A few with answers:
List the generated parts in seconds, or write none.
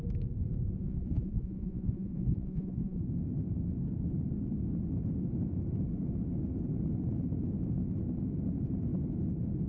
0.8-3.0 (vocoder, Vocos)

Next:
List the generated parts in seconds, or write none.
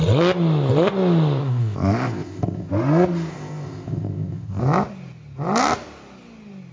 1.4-2.7 (codec, ZipCodec); 3.3-4.6